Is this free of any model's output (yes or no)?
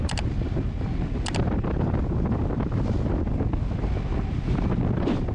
yes